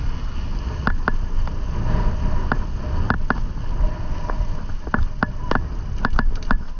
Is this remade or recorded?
recorded